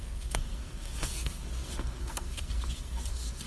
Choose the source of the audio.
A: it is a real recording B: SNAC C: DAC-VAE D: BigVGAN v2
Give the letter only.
B